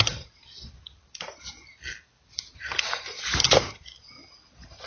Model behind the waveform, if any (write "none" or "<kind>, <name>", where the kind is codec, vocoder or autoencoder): vocoder, BigVGAN v2